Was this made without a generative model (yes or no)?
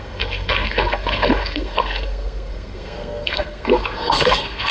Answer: no